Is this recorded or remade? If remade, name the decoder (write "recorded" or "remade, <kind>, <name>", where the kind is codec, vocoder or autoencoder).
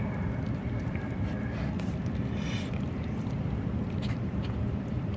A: remade, vocoder, BigVGAN v2